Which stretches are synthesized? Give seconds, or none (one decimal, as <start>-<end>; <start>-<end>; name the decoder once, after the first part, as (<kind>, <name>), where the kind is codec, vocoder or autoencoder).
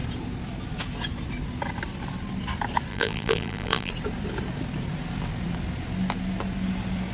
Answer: 2.9-3.9 (vocoder, BigVGAN v2)